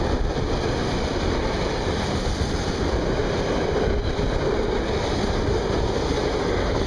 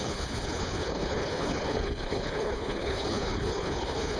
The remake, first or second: second